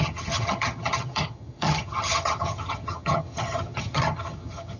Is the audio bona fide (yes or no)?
no